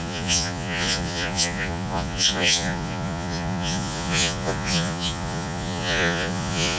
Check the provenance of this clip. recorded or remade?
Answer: remade